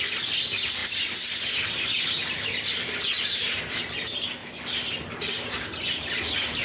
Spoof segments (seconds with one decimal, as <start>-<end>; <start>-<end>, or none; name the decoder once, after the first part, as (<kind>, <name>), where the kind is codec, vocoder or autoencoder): none